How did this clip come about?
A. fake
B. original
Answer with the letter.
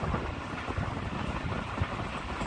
B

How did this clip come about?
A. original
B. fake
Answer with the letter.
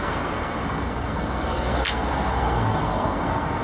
B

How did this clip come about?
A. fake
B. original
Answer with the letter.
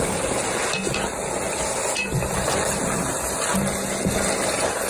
B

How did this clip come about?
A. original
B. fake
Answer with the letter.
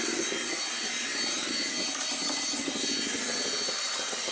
A